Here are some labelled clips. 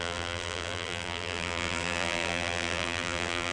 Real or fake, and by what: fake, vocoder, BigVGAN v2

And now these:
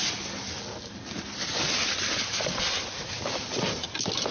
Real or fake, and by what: real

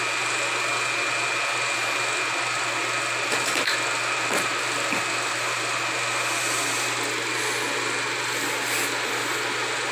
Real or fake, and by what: real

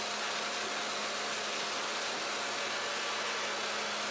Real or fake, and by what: real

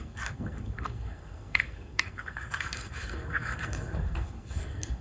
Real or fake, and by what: fake, codec, SNAC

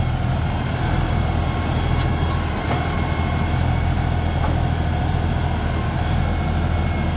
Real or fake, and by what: real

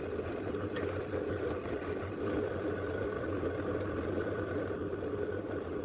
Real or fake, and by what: real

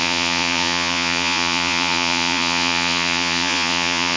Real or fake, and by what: fake, vocoder, Vocos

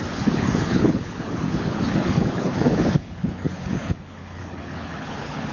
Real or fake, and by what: fake, codec, HILCodec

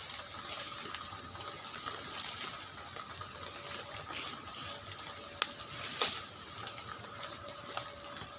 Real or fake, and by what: real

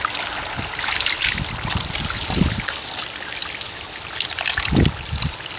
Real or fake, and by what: real